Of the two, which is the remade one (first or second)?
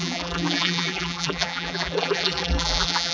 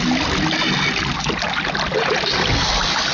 first